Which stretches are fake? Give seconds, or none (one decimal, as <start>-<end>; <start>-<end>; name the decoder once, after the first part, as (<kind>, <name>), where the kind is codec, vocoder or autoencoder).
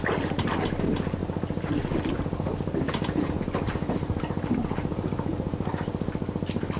none